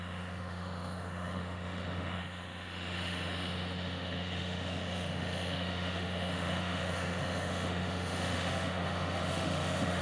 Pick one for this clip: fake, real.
fake